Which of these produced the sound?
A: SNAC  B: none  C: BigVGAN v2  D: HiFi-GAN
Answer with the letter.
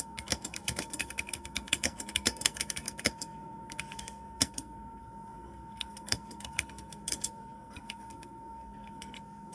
A